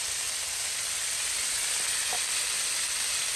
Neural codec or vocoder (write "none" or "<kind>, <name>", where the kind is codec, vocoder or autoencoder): none